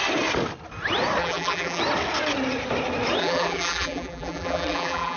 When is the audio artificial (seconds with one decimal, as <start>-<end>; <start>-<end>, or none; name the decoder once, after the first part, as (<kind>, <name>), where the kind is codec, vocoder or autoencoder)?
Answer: 1.2-1.8 (vocoder, BigVGAN v2); 3.2-5.2